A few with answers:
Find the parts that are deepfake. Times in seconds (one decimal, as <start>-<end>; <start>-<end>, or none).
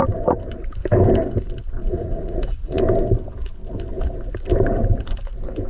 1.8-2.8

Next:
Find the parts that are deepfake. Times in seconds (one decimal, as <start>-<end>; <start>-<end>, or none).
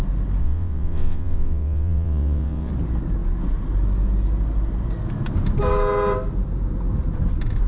0.4-2.7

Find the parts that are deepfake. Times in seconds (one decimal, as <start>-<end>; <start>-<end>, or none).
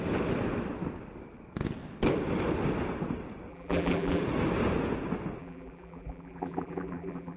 3.5-4.2; 5.4-7.4